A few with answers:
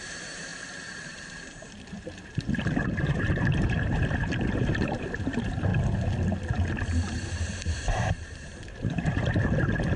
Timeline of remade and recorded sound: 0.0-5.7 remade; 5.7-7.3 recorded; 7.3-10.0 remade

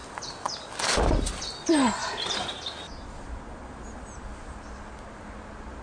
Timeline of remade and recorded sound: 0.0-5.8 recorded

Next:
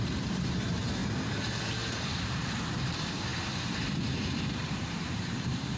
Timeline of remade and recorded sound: 0.0-1.0 remade; 1.0-1.7 recorded; 1.7-5.8 remade

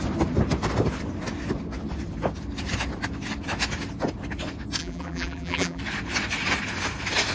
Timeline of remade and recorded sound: 0.0-4.8 recorded; 4.8-5.8 remade; 5.8-7.3 recorded